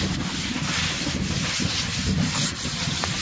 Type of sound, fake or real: real